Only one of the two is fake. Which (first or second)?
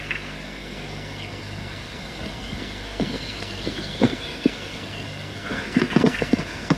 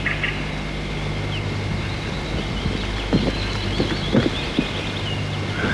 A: first